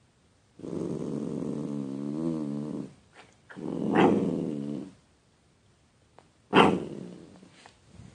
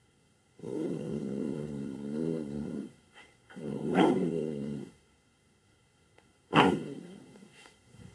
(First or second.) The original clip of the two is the first